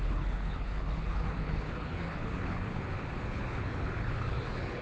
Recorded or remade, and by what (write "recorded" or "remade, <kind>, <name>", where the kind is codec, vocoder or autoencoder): remade, codec, HILCodec